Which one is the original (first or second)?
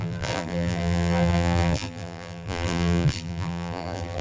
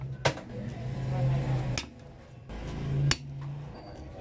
second